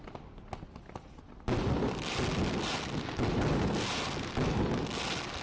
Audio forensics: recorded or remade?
recorded